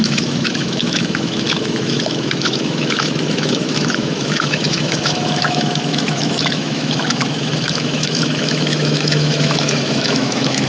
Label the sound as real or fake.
fake